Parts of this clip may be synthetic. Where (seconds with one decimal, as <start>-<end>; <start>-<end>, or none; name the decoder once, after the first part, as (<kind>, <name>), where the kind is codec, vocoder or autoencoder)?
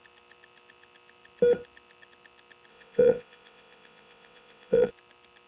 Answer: 2.7-4.9 (vocoder, WaveNeXt)